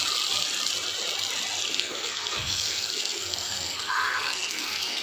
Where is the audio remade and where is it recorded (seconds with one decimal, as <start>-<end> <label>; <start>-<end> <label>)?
0.0-1.7 recorded; 1.7-5.0 remade